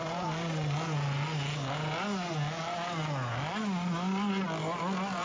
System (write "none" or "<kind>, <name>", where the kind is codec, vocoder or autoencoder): none